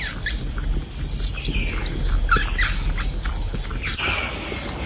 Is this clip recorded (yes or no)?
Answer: yes